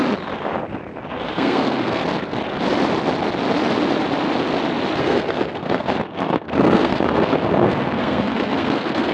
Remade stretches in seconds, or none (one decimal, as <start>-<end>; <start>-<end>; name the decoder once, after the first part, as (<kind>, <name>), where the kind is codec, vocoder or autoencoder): 1.1-2.0 (codec, SNAC); 5.0-9.1